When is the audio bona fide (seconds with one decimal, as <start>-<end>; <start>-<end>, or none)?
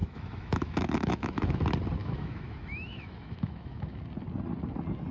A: 1.6-2.0; 4.0-5.1